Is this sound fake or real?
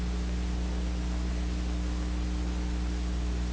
real